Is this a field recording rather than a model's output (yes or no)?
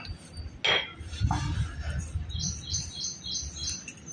yes